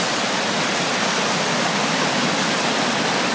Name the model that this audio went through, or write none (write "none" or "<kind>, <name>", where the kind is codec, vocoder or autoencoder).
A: none